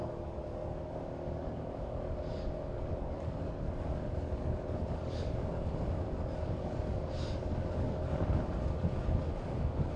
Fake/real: fake